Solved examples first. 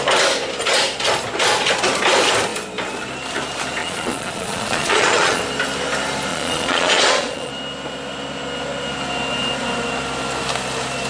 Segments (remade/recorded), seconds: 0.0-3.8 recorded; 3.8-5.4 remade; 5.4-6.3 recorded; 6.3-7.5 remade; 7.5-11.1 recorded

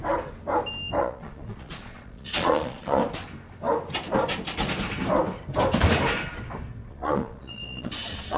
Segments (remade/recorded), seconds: 0.0-1.0 recorded; 1.0-3.0 remade; 3.0-6.9 recorded; 6.9-8.4 remade

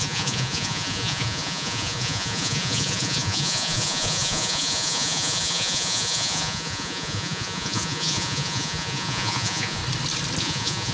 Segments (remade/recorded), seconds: 0.0-9.8 remade; 9.8-10.4 recorded; 10.4-10.9 remade

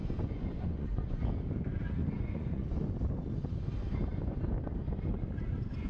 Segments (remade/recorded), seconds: 0.0-1.2 remade; 1.2-2.0 recorded; 2.0-2.6 remade; 2.6-5.9 recorded

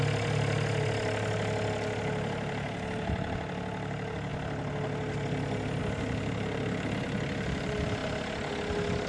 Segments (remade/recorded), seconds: 0.0-9.1 recorded